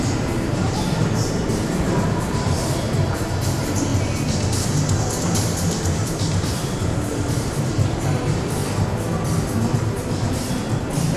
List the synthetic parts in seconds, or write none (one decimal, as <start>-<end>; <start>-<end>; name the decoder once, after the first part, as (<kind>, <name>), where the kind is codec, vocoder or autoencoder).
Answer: 0.0-3.9 (vocoder, BigVGAN v2); 5.2-8.6